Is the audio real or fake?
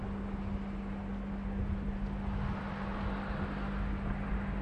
real